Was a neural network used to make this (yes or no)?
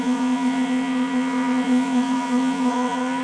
yes